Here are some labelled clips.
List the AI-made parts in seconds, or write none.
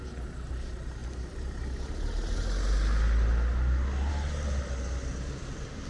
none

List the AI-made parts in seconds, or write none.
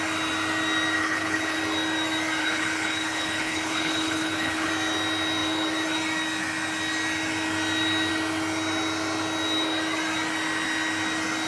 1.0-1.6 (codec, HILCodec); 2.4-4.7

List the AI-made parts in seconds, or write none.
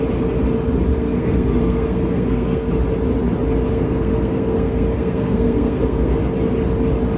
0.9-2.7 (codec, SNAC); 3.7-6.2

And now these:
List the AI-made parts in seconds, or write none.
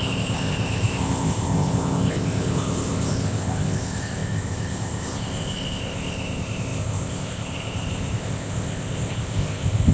0.0-9.9 (codec, ZipCodec)